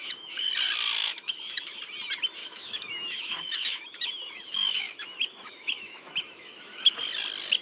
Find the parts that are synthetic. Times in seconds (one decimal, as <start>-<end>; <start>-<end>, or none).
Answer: 0.0-0.5; 1.0-1.8; 2.4-7.0